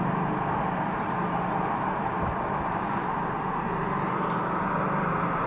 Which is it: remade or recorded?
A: recorded